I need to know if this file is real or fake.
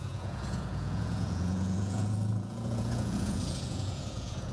fake